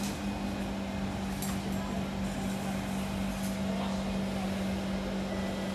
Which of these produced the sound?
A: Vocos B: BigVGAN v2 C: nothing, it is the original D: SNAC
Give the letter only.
C